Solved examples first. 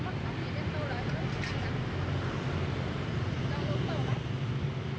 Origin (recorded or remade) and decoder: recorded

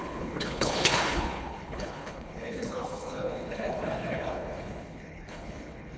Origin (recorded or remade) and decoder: remade, codec, HILCodec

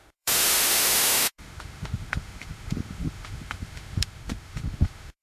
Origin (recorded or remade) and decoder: remade, autoencoder, DAC-VAE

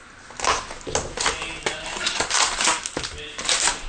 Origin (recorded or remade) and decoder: recorded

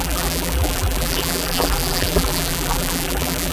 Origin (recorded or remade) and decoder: remade, vocoder, BigVGAN v2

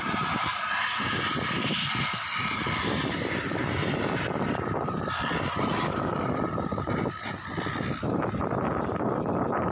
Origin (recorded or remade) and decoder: recorded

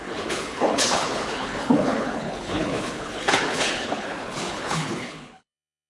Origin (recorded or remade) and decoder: remade, codec, HILCodec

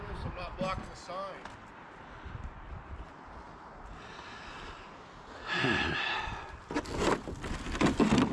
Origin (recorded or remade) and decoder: recorded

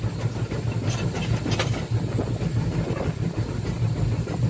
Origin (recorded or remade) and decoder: recorded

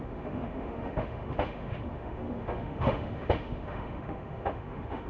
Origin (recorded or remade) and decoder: remade, autoencoder, DAC-VAE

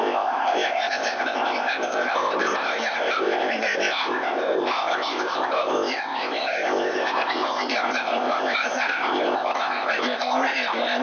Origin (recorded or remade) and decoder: remade, codec, ZipCodec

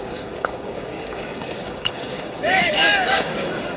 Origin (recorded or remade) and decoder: remade, codec, DAC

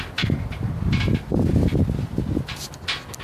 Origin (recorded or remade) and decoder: recorded